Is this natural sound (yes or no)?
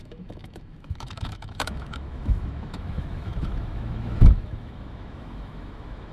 no